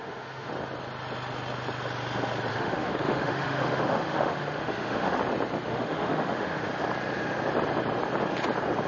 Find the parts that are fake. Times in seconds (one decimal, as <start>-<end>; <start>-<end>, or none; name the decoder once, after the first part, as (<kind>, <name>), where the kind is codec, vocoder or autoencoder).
0.0-0.5 (autoencoder, DAC-VAE); 2.5-5.2; 5.7-6.7